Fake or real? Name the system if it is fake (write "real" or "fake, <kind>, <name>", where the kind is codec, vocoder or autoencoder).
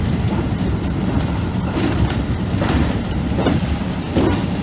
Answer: fake, vocoder, BigVGAN v2